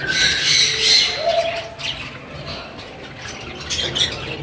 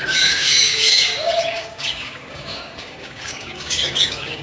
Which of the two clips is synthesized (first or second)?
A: second